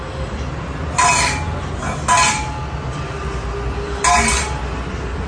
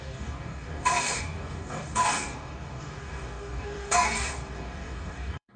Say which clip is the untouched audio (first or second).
first